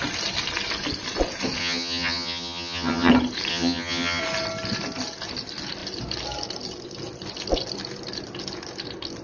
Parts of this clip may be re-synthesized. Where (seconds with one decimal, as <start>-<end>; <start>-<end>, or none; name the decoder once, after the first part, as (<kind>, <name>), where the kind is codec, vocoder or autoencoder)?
1.6-3.1 (vocoder, HiFi-GAN); 3.5-4.2